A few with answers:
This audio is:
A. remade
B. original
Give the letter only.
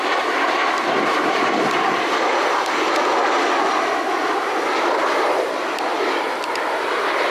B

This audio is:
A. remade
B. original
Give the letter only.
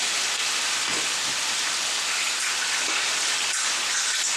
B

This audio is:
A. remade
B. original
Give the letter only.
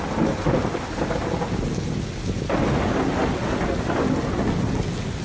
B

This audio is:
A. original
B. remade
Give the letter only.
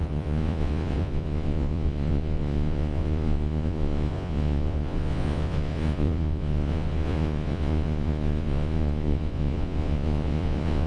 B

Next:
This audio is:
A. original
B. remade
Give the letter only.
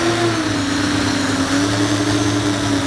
A